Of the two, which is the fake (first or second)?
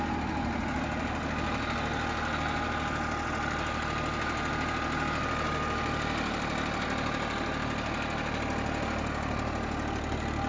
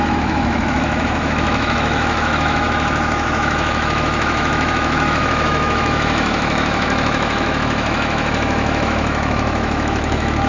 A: second